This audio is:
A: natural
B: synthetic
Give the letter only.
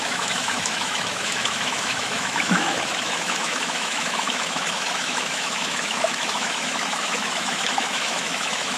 B